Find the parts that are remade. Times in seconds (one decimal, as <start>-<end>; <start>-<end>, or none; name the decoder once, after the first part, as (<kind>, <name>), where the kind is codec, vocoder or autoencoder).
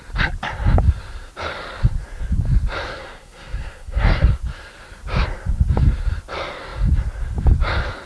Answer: 2.9-4.3 (codec, SNAC)